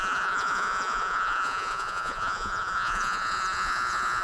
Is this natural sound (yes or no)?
no